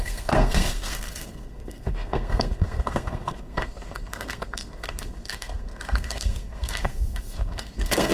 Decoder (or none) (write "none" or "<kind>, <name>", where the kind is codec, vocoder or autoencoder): codec, SNAC